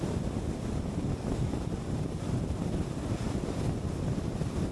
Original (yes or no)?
yes